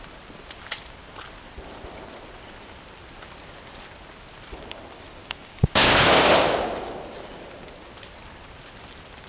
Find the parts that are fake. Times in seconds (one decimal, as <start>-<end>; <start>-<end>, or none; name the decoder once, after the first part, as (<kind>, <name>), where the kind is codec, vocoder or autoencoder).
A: 5.2-6.3 (codec, DAC)